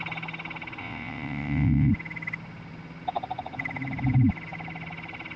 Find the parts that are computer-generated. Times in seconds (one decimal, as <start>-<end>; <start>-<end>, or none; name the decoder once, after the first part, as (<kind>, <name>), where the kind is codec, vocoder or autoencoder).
0.8-1.9 (vocoder, WaveNeXt)